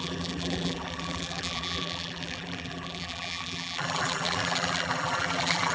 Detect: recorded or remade remade